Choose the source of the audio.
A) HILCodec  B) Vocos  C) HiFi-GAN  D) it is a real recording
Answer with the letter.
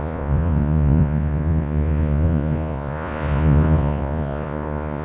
B